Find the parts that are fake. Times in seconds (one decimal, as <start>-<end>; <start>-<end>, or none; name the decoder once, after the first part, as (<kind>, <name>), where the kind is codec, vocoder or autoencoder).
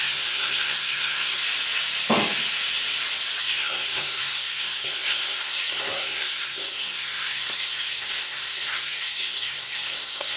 0.0-1.4 (codec, SNAC); 3.4-10.4